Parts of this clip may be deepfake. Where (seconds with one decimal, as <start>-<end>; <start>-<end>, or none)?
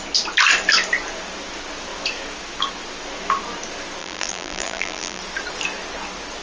4.0-5.2